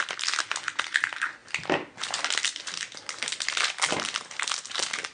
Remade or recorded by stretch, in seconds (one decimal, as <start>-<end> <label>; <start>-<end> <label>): 0.0-5.1 recorded